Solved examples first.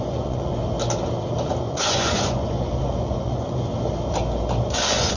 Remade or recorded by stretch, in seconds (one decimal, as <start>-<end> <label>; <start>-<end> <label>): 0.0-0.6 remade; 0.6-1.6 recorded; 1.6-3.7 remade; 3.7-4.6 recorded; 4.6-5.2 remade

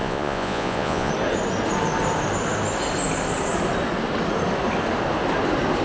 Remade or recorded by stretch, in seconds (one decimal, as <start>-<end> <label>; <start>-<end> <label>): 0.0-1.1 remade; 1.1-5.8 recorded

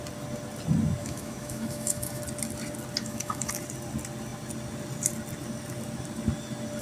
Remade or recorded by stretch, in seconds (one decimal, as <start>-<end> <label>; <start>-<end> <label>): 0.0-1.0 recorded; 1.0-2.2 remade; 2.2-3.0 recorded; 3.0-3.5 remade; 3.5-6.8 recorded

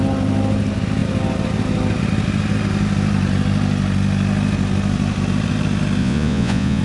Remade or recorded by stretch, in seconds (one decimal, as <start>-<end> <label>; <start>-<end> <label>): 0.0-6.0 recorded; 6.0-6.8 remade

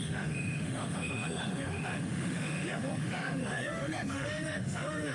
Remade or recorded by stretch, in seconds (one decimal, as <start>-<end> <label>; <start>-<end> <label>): 0.0-5.1 remade